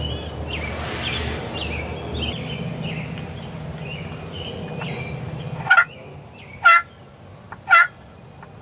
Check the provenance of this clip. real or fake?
real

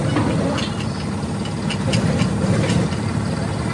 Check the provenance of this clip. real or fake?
real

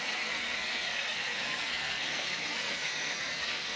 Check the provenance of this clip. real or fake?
fake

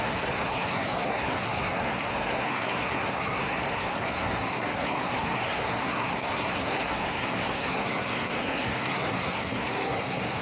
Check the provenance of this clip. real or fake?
fake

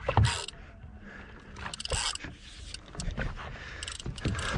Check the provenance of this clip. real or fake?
real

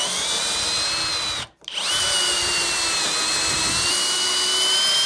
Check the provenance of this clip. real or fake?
real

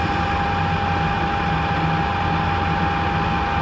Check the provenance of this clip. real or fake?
real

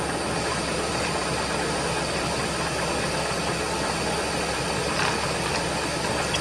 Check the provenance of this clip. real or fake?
real